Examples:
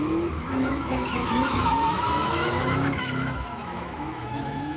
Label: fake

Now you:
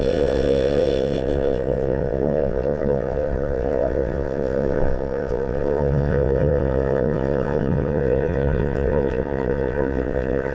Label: fake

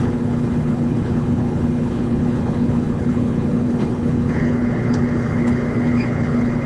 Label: fake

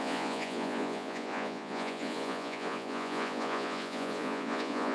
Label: fake